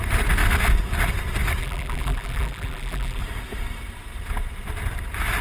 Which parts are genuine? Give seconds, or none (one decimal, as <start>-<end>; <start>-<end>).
0.0-1.6; 3.2-5.4

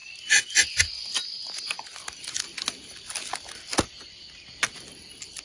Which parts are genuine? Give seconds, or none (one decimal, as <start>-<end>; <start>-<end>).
0.0-5.4